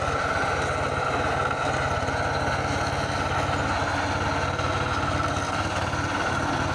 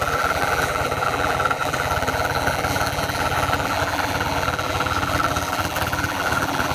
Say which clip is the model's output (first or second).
second